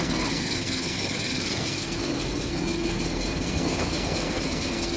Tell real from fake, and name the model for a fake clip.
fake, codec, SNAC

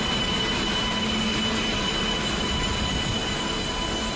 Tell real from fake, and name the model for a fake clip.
real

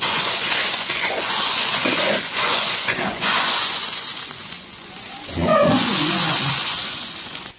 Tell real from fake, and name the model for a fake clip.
fake, vocoder, Vocos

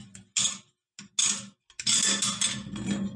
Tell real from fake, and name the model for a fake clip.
real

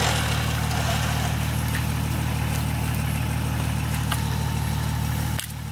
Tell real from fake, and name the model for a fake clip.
real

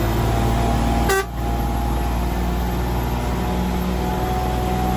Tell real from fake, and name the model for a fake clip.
real